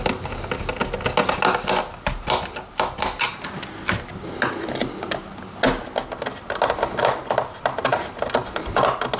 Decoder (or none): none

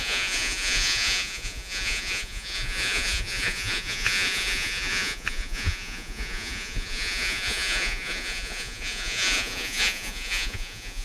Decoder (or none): vocoder, Vocos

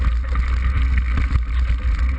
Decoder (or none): none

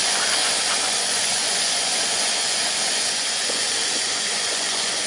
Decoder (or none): vocoder, Vocos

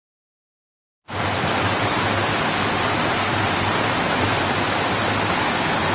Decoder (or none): none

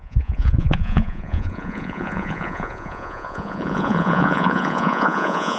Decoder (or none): vocoder, Vocos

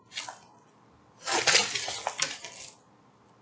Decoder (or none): none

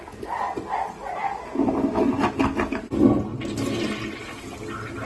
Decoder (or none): none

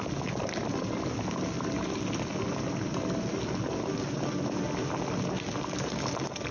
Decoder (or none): none